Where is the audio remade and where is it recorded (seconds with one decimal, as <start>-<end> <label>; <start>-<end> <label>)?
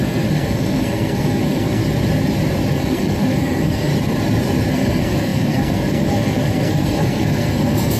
0.0-1.8 remade; 1.8-2.7 recorded; 2.7-3.9 remade; 3.9-4.7 recorded; 4.7-8.0 remade